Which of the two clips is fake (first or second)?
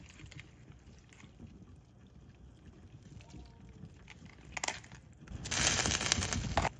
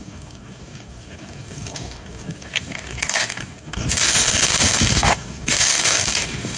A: second